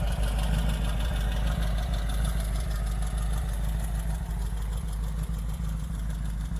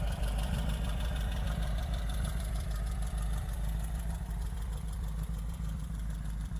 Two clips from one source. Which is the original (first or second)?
first